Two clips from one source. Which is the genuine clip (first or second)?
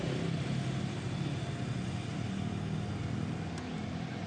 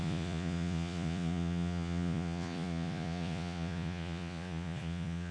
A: first